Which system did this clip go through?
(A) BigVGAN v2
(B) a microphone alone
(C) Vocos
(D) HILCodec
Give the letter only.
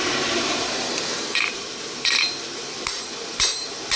A